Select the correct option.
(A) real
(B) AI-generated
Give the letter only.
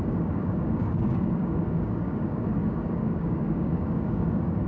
B